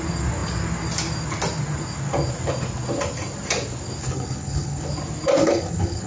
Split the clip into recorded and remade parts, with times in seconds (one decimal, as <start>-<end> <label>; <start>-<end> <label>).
0.0-4.0 recorded; 4.0-4.9 remade; 4.9-5.4 recorded; 5.4-6.1 remade